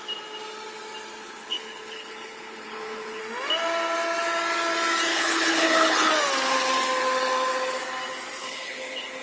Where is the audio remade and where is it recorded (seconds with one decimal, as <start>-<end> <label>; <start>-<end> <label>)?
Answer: 0.0-1.2 recorded; 1.2-3.2 remade; 3.2-5.1 recorded; 5.1-6.1 remade; 6.1-8.4 recorded; 8.4-9.2 remade

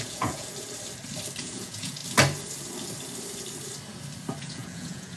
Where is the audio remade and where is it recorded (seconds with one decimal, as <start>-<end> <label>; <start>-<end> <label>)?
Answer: 0.0-0.5 remade; 0.5-1.4 recorded; 1.4-2.0 remade; 2.0-4.4 recorded; 4.4-5.2 remade

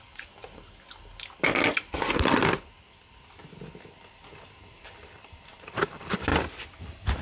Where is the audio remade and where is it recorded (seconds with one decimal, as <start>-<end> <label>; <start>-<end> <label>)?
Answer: 0.0-0.4 remade; 0.4-4.7 recorded; 4.7-6.3 remade; 6.3-6.8 recorded; 6.8-7.2 remade

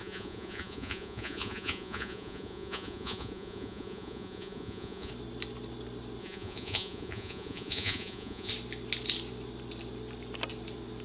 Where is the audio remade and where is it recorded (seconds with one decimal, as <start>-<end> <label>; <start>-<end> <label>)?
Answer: 0.0-5.1 remade; 5.1-6.2 recorded; 6.2-8.5 remade; 8.5-11.0 recorded

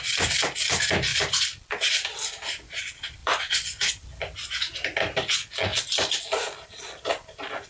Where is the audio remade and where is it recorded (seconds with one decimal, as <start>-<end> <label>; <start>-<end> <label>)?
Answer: 0.0-1.1 recorded; 1.1-2.8 remade; 2.8-3.2 recorded; 3.2-4.1 remade; 4.1-5.7 recorded; 5.7-6.2 remade; 6.2-7.7 recorded

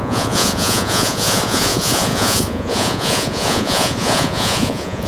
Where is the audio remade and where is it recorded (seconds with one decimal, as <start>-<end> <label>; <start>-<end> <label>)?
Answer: 0.0-5.1 remade

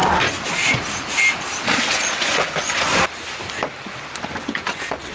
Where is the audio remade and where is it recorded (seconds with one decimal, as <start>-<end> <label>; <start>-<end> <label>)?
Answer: 0.0-1.9 recorded; 1.9-2.9 remade; 2.9-4.3 recorded; 4.3-5.1 remade